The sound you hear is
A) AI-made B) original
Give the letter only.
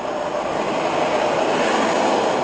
B